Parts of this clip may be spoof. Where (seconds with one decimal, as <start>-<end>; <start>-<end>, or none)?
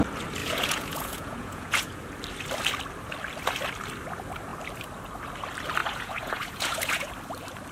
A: 0.4-2.0; 5.8-7.1